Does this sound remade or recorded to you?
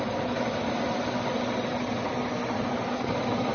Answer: recorded